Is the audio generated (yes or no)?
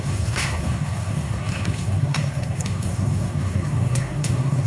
yes